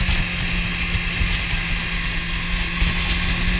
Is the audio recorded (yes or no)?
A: yes